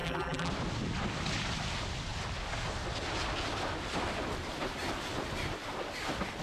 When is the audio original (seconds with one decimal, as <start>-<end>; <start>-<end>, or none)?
0.5-6.4

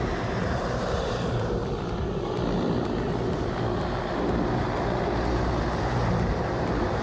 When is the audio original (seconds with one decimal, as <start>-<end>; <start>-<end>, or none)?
1.6-5.8